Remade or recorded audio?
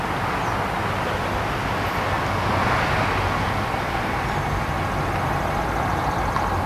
recorded